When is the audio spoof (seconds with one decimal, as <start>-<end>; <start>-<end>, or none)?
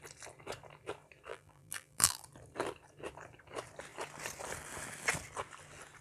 1.3-2.2